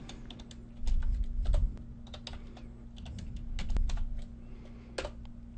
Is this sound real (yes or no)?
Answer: yes